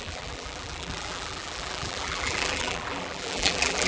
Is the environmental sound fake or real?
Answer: fake